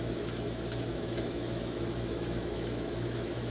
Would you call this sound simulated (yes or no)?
yes